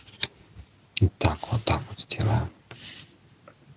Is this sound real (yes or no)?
yes